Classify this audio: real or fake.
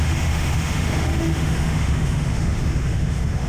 fake